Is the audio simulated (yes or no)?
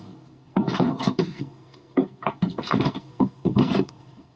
yes